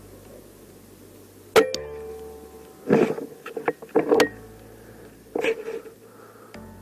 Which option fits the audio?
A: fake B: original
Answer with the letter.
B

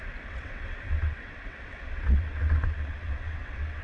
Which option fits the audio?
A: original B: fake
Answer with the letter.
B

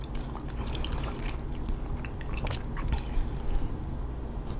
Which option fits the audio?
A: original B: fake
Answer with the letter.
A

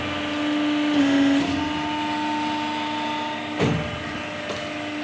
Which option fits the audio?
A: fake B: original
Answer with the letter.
B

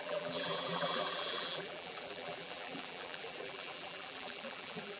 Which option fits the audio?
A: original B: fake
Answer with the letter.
B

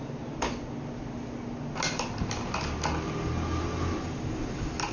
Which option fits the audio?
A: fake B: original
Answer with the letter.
B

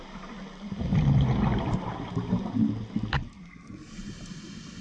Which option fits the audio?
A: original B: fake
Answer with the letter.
A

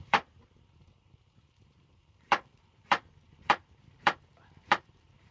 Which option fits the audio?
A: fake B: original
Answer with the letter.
A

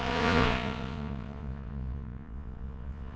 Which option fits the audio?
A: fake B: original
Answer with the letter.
A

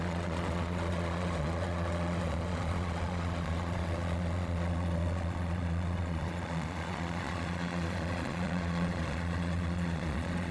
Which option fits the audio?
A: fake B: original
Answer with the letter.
A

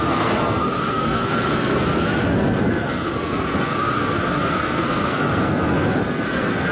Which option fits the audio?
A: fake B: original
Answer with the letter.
A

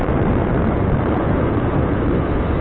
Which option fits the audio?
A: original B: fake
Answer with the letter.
B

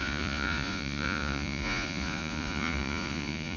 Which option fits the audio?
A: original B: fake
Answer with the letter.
B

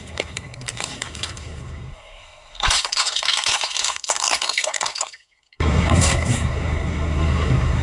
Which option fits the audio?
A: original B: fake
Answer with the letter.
B